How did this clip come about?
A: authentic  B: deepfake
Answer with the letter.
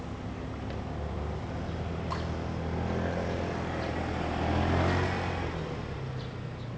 A